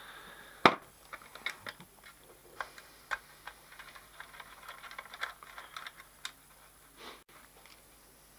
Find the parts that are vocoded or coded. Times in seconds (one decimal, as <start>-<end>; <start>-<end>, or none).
2.4-3.1